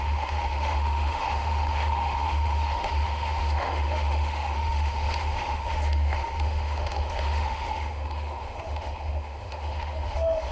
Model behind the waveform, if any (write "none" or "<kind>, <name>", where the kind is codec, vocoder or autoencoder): autoencoder, DAC-VAE